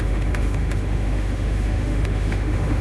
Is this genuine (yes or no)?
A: no